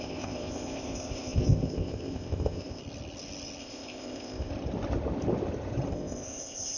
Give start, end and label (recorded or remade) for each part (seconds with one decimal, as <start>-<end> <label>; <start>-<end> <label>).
0.0-2.8 remade; 2.8-3.6 recorded; 3.6-4.5 remade; 4.5-5.9 recorded; 5.9-6.8 remade

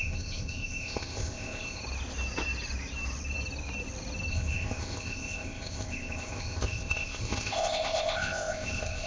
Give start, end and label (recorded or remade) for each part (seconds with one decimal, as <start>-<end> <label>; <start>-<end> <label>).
0.0-1.8 remade; 1.8-4.3 recorded; 4.3-9.1 remade

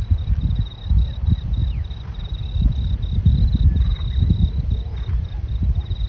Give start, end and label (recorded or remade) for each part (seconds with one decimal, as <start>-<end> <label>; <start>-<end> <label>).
0.0-6.1 recorded